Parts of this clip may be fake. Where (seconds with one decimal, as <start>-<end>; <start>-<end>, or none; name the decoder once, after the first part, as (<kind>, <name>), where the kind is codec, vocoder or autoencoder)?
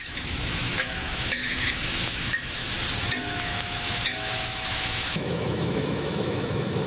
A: 0.0-2.6 (autoencoder, DAC-VAE); 3.2-6.9